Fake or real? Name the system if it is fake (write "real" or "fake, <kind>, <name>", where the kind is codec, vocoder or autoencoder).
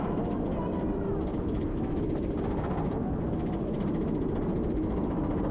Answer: fake, vocoder, BigVGAN v2